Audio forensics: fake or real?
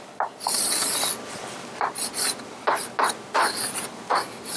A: fake